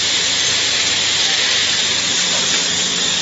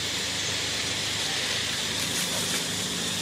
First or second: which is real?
first